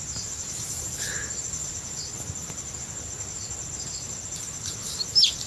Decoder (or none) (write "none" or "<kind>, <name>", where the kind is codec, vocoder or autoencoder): none